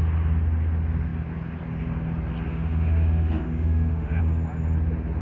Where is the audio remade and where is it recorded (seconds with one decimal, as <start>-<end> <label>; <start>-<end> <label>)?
0.0-2.5 recorded; 2.5-4.2 remade; 4.2-5.2 recorded